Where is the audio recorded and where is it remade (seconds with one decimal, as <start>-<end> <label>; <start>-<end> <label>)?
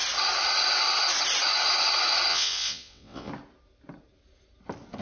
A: 0.0-2.3 recorded; 2.3-3.3 remade; 3.3-5.0 recorded